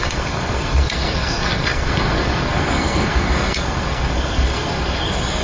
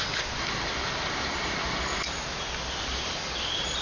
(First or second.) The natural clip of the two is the second